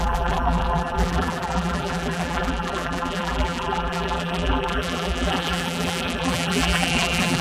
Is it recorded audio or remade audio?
remade